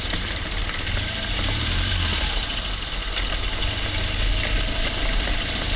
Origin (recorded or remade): recorded